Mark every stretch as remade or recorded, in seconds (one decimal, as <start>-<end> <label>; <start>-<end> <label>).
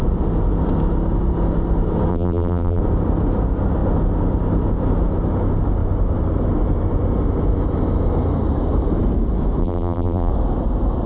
0.0-2.1 recorded; 2.1-2.8 remade; 2.8-9.6 recorded; 9.6-10.3 remade; 10.3-11.1 recorded